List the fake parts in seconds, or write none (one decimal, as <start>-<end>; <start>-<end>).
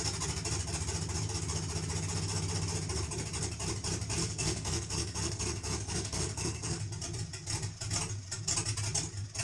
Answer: 4.2-6.8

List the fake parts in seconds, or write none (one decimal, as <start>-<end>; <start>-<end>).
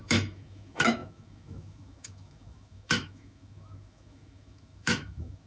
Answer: 0.0-5.5